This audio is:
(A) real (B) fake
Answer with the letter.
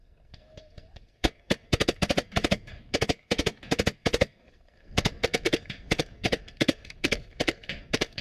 B